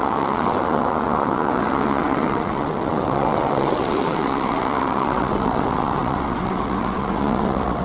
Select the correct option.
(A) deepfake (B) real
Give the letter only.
A